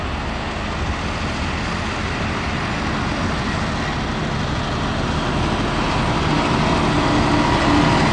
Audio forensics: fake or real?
real